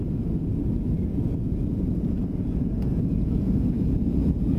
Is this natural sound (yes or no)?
no